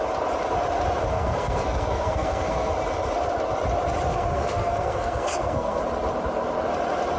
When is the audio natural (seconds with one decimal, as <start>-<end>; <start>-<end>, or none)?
0.0-1.1; 2.7-4.1; 5.8-7.2